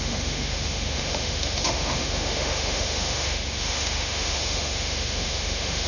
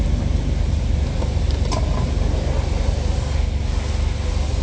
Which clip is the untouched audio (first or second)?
second